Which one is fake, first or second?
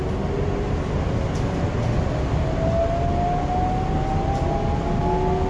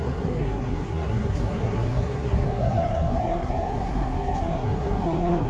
second